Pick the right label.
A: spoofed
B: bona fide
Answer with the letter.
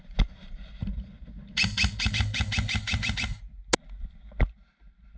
B